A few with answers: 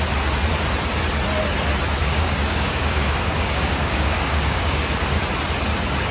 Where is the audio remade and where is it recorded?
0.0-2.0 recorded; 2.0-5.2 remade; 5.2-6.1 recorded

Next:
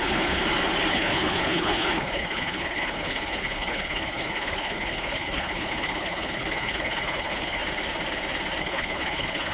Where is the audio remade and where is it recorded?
0.0-0.4 remade; 0.4-0.9 recorded; 0.9-7.6 remade; 7.6-8.6 recorded; 8.6-9.5 remade